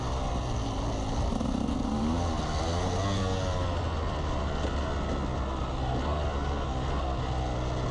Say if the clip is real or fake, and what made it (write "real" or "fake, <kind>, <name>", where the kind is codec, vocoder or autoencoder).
real